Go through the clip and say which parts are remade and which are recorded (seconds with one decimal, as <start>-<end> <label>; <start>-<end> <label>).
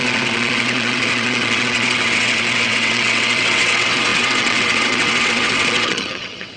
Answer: 0.0-6.6 remade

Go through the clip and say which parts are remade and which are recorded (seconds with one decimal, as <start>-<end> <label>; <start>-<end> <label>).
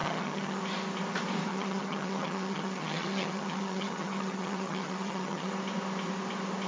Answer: 0.0-0.6 remade; 0.6-1.5 recorded; 1.5-5.5 remade; 5.5-6.7 recorded